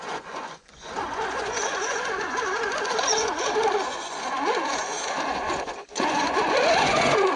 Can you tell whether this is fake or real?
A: fake